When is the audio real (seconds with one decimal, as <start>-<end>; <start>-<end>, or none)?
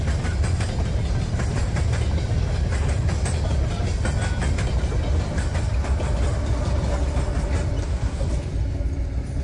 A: 0.0-7.8; 8.3-9.4